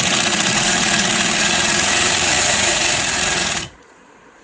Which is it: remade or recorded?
remade